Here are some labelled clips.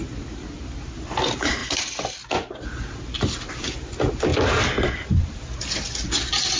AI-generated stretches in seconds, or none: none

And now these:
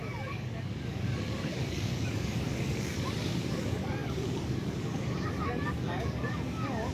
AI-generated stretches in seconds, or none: 0.0-6.9 (codec, DAC)